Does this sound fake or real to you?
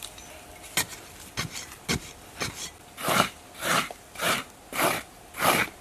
real